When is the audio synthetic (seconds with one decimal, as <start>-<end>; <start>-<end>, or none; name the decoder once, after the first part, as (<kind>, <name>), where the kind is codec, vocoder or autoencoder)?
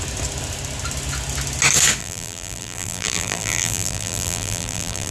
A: 2.0-5.1 (vocoder, BigVGAN v2)